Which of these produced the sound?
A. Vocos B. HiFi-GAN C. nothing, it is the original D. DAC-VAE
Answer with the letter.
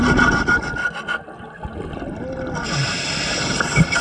C